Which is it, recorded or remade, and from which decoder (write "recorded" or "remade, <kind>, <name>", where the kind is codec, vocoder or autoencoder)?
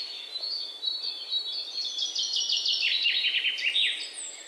recorded